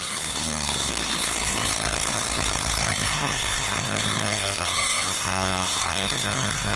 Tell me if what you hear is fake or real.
fake